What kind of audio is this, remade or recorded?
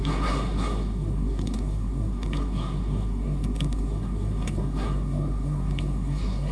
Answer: remade